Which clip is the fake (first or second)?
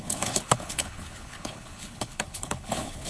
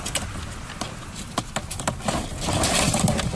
first